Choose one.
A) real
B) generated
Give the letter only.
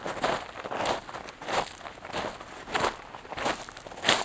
A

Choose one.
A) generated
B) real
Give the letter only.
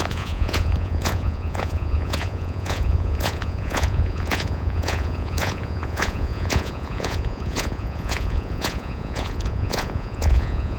A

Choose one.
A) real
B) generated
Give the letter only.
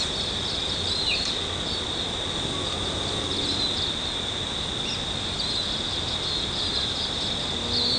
A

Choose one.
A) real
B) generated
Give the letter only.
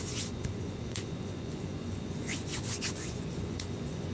B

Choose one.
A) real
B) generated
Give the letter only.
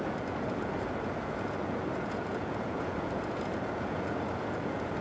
B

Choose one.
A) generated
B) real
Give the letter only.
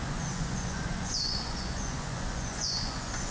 A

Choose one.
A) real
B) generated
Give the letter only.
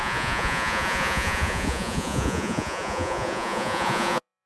B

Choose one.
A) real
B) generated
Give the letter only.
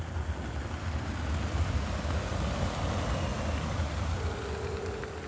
A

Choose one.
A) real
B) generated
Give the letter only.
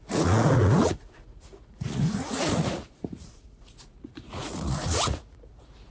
B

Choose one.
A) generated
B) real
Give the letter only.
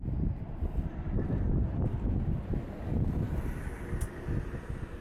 B